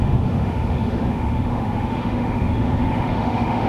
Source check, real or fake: fake